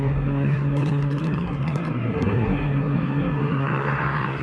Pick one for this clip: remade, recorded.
remade